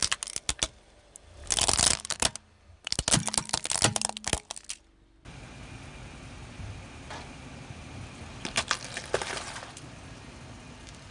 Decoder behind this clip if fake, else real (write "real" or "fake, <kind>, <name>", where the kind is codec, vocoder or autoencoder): real